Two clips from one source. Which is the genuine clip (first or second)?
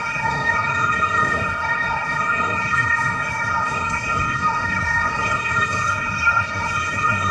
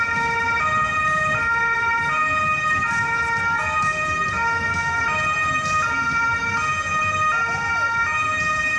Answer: second